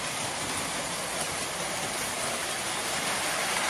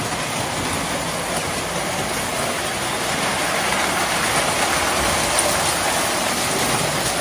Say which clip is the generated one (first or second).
first